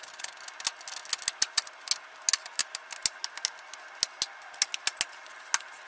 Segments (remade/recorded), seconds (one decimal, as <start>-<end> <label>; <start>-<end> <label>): 0.0-5.9 recorded